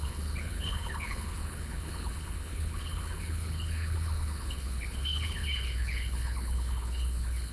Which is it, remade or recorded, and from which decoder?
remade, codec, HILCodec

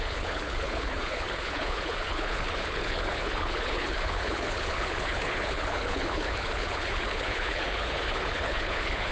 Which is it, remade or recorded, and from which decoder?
remade, codec, HILCodec